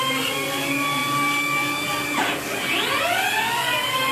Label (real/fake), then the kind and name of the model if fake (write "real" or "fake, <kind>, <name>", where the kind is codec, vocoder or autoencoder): real